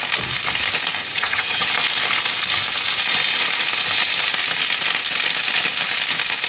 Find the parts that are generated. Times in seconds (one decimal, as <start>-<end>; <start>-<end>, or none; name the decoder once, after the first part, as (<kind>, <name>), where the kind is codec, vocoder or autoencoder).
1.0-1.7 (vocoder, HiFi-GAN)